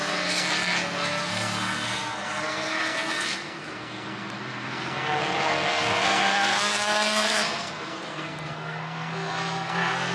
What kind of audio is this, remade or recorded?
remade